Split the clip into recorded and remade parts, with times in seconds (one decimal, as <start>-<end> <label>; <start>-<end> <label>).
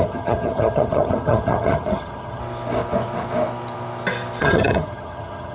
0.0-2.4 remade; 2.4-4.4 recorded; 4.4-5.5 remade